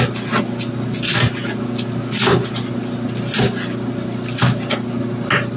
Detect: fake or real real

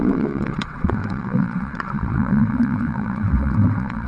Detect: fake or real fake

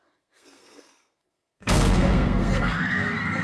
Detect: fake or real fake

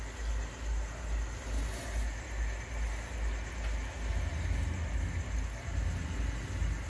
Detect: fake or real real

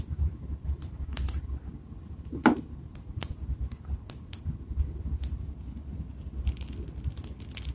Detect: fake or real real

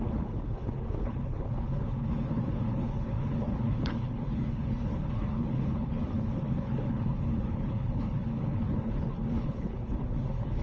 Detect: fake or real fake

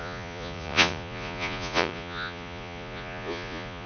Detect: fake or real fake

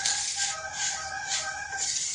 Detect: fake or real real